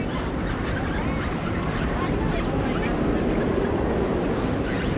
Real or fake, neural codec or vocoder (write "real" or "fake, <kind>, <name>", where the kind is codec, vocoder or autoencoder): real